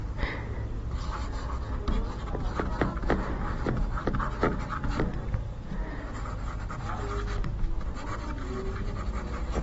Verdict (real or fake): real